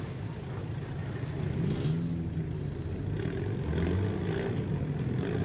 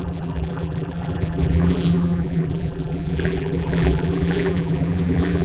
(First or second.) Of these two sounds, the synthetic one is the second